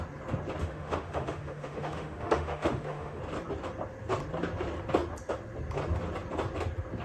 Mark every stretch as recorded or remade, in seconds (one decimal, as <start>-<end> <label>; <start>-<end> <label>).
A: 0.0-0.6 recorded; 0.6-3.2 remade; 3.2-7.0 recorded